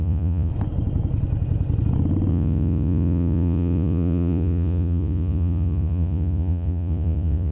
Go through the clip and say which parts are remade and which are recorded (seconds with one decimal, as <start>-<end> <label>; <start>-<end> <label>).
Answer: 0.0-0.5 remade; 0.5-2.3 recorded; 2.3-7.5 remade